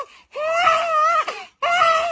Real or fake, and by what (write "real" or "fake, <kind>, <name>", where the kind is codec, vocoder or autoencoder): real